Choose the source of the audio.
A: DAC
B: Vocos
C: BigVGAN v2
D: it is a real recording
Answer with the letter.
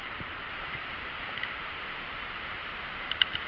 C